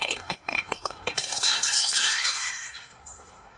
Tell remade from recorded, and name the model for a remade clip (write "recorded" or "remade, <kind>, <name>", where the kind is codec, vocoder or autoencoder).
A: remade, codec, SNAC